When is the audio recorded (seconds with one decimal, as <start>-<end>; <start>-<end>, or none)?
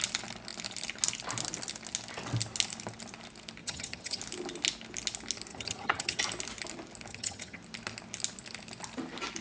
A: 0.0-3.6; 4.2-5.5; 6.2-7.1; 7.6-9.4